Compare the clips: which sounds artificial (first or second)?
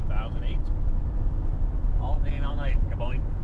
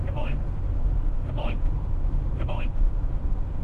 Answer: second